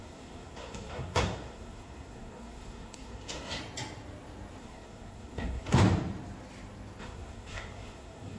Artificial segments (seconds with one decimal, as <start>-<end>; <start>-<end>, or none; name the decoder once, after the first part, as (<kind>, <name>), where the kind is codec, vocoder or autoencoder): 0.0-3.6 (codec, SNAC); 4.6-5.8; 7.0-8.4